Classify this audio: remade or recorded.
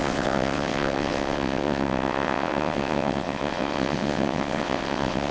remade